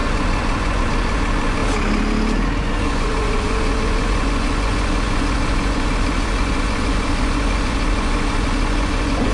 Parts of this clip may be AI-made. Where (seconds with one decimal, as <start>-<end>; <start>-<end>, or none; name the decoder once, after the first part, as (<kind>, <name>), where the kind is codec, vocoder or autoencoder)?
0.0-1.6 (vocoder, Vocos); 2.6-9.3

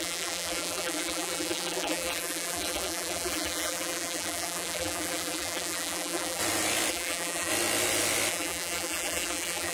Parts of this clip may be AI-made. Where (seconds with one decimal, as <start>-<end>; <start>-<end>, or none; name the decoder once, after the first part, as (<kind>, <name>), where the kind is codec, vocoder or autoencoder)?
0.0-6.4 (vocoder, BigVGAN v2); 6.9-7.5; 8.3-9.7